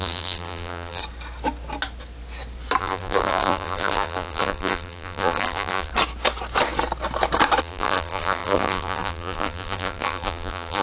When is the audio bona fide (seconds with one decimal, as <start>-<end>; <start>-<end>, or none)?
1.0-2.8; 5.9-7.6